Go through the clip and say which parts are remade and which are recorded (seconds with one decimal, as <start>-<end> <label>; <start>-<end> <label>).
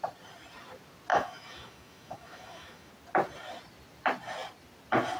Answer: 0.0-1.1 recorded; 1.1-2.9 remade; 2.9-5.2 recorded